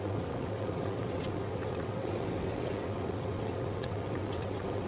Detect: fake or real fake